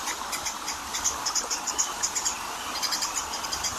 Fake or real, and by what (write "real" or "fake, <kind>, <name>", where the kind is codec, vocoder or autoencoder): real